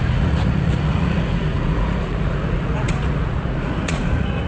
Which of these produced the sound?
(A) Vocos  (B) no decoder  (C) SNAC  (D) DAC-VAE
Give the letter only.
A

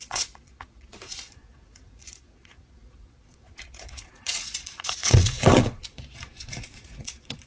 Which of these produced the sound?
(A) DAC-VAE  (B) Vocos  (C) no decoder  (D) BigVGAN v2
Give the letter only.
B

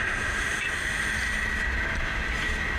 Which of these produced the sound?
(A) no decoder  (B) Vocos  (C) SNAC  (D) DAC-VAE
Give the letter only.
A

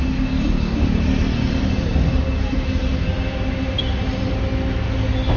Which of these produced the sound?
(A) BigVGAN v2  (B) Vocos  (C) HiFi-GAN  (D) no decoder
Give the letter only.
D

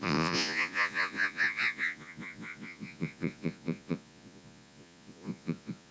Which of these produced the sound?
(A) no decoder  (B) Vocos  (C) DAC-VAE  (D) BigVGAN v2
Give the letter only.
B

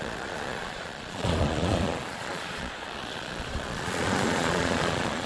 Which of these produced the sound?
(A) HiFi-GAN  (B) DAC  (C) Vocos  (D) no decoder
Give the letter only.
C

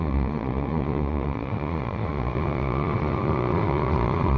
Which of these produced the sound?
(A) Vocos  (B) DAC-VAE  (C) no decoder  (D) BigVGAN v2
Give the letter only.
A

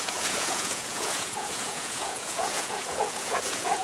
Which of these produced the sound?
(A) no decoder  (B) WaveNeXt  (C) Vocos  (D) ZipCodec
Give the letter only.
C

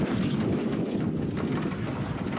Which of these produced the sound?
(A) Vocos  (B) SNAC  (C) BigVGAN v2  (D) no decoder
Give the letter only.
D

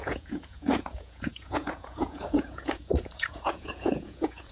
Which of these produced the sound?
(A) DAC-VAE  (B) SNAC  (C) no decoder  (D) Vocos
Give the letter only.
D